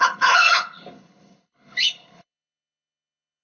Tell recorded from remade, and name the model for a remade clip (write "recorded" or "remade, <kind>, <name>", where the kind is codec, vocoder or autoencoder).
remade, codec, HILCodec